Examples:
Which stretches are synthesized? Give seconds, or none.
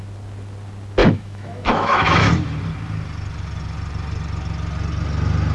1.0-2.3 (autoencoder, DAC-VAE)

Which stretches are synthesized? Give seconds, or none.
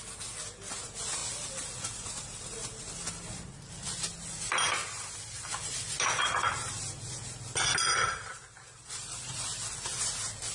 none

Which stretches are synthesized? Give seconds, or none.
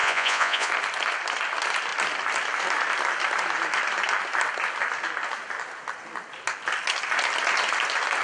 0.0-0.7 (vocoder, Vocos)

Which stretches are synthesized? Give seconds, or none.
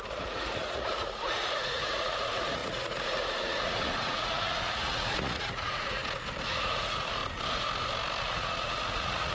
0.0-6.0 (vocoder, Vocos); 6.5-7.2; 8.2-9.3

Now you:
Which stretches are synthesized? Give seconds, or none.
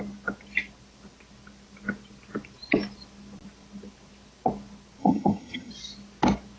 5.0-5.7 (vocoder, HiFi-GAN)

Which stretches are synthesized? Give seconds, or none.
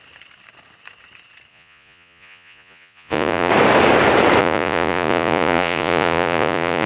1.5-3.5 (vocoder, Vocos); 4.4-6.9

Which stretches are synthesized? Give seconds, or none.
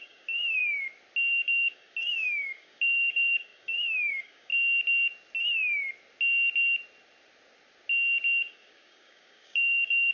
0.0-0.6 (codec, DAC); 1.3-4.5; 8.4-10.1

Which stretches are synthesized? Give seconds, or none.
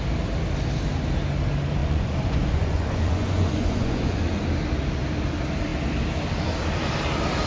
1.8-4.2 (vocoder, Vocos)